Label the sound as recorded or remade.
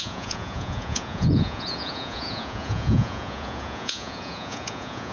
remade